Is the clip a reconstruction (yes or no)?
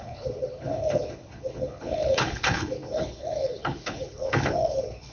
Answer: yes